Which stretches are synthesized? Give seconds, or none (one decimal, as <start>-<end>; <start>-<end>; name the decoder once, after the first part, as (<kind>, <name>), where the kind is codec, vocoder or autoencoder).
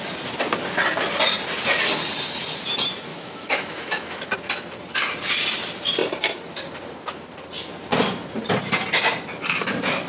3.1-4.2 (autoencoder, DAC-VAE)